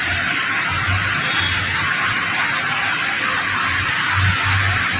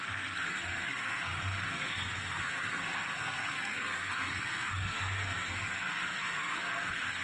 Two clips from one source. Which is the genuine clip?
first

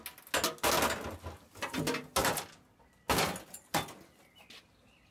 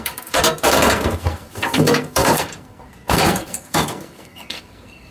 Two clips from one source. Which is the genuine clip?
first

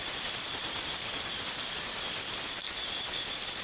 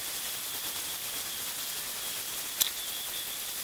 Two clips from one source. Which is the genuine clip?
second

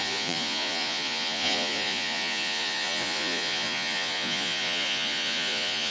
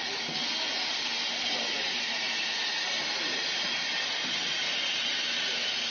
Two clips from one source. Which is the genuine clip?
second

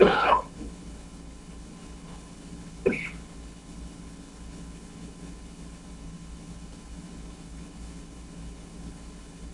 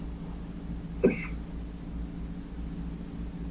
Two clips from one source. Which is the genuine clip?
second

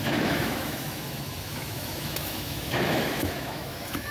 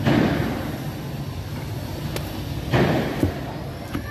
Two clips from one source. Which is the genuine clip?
second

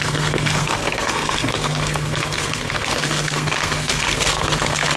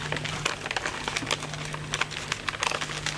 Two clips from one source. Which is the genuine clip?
second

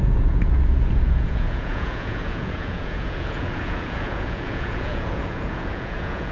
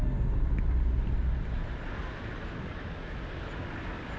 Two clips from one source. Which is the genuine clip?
second